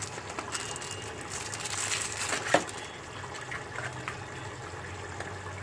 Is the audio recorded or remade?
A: recorded